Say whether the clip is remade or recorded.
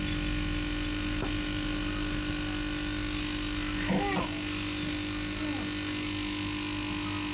recorded